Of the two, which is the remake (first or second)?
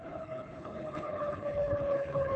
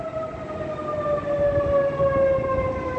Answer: first